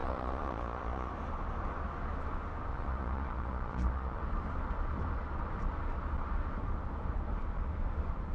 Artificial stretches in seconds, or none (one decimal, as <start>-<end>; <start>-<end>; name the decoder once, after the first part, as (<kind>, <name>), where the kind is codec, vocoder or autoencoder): 0.0-1.1 (vocoder, Vocos); 2.7-4.2